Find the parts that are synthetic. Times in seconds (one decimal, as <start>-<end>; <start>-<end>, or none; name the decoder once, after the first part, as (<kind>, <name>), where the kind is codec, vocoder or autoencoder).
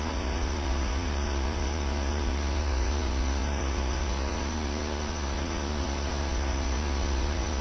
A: 0.0-7.6 (vocoder, Vocos)